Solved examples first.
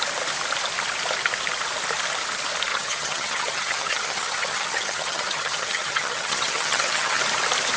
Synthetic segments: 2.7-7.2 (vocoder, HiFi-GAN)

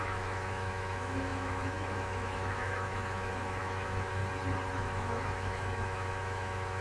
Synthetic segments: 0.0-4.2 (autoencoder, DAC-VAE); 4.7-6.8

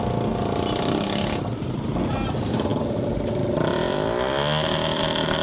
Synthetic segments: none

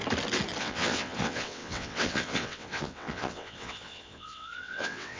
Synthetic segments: 0.6-5.2 (vocoder, WaveNeXt)

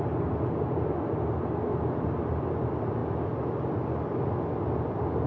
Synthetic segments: none

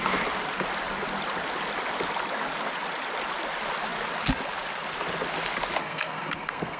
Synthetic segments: 5.8-6.8 (codec, SNAC)

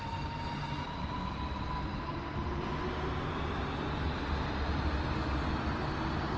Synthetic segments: none

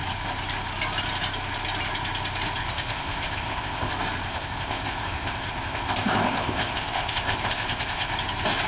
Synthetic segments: 2.6-3.9 (codec, ZipCodec); 4.3-8.1